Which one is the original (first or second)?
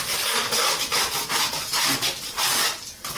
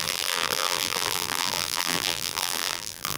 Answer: first